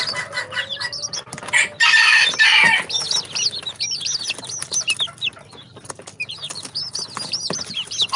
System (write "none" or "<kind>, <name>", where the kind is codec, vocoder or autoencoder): none